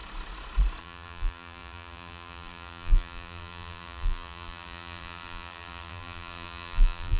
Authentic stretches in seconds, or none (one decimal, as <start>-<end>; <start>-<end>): 0.0-0.8